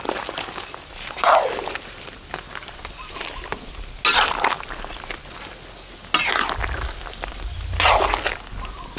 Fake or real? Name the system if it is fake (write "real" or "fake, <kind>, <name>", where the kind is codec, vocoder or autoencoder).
real